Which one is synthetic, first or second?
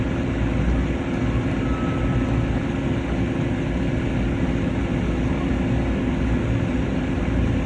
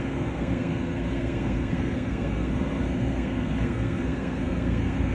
second